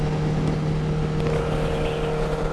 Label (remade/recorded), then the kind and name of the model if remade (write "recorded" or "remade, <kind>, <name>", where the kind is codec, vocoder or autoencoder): recorded